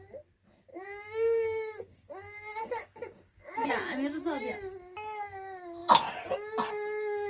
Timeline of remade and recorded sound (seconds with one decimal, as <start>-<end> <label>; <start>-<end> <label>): 0.0-0.7 recorded; 0.7-3.7 remade; 3.7-7.3 recorded